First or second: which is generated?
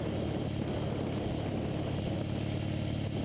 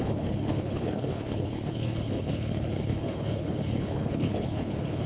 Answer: second